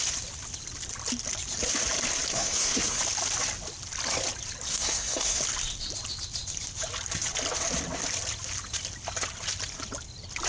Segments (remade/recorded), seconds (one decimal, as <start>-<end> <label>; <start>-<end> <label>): 0.0-2.3 recorded; 2.3-3.0 remade; 3.0-4.7 recorded; 4.7-5.4 remade; 5.4-10.5 recorded